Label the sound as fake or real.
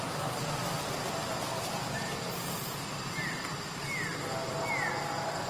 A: real